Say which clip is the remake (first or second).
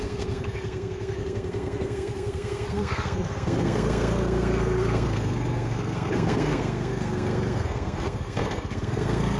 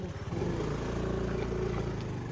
first